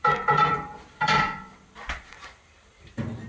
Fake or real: real